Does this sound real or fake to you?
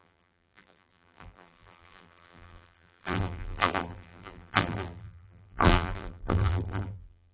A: fake